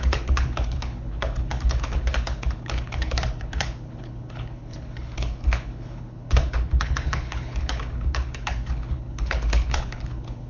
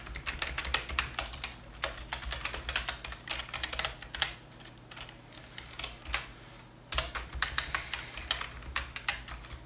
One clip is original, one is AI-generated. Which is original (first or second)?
second